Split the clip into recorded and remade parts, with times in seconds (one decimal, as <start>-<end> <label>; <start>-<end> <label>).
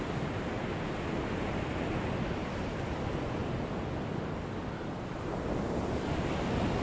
0.0-6.8 recorded